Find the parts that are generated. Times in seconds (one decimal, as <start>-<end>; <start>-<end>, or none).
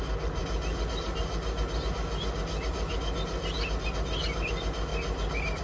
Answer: none